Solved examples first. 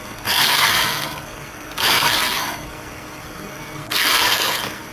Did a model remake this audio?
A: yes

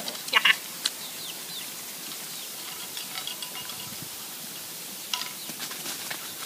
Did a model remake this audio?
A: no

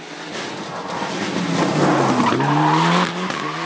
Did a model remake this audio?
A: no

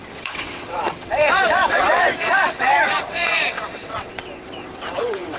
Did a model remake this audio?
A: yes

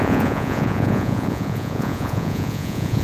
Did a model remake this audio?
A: yes